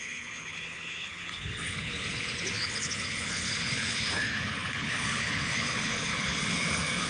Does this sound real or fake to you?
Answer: fake